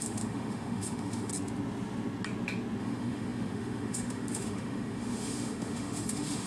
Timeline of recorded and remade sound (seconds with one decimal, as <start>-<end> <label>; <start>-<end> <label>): 0.0-1.3 remade; 1.3-2.8 recorded; 2.8-6.5 remade